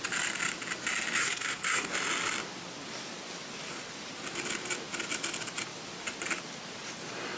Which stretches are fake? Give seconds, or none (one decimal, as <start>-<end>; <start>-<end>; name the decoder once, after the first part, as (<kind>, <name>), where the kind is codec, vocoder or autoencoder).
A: 1.2-1.9 (codec, SNAC)